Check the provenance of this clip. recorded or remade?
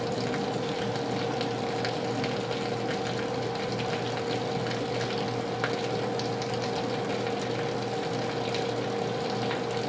recorded